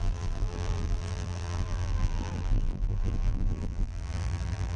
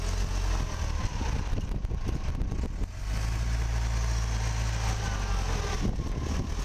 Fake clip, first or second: first